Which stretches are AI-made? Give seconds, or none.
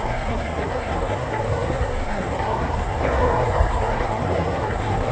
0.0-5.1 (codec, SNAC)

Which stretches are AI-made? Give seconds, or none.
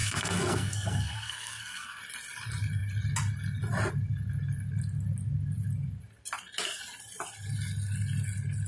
0.0-2.0 (codec, SNAC)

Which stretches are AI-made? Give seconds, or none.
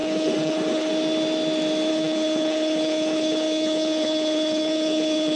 0.0-0.9 (codec, HILCodec); 1.9-5.4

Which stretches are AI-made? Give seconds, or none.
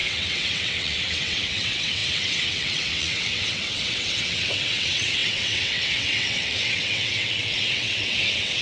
0.0-8.6 (vocoder, WaveNeXt)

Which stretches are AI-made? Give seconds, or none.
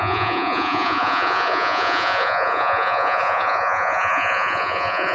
0.0-5.1 (vocoder, Vocos)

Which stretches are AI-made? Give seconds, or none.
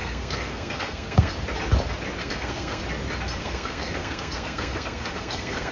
0.0-1.3 (codec, SNAC); 2.2-2.8; 3.4-5.7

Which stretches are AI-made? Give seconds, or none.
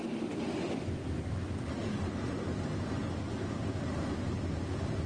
none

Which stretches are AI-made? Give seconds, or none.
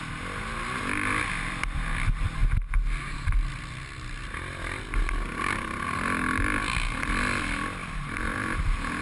7.8-8.6 (vocoder, BigVGAN v2)